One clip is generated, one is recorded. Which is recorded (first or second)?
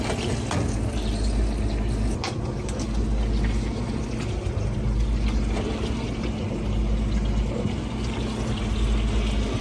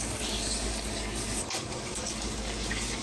first